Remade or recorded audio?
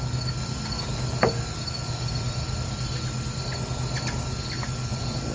recorded